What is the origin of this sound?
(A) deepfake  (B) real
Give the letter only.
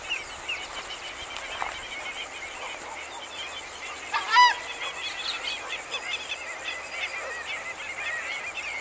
B